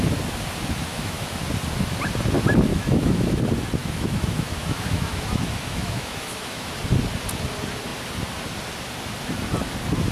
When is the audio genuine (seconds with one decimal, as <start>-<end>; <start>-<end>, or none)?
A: 0.0-0.9; 1.4-2.7; 3.4-3.8; 6.7-10.1